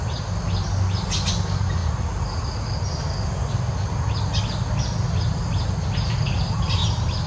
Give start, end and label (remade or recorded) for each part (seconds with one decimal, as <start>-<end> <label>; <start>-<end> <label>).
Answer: 0.0-7.3 recorded